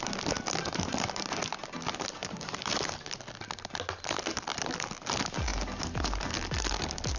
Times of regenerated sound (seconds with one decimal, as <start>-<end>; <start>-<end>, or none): 2.2-3.1